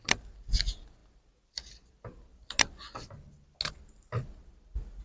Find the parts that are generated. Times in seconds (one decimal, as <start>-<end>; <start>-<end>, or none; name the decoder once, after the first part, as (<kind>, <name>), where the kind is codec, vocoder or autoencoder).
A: none